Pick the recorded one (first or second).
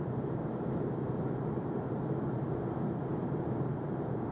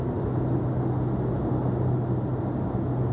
second